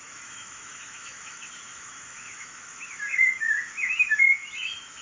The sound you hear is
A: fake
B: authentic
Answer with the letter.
A